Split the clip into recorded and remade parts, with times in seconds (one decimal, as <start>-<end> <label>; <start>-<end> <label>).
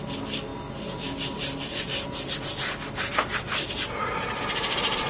0.0-5.1 recorded